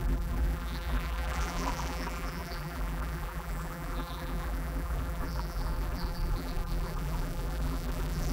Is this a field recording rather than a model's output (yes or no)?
no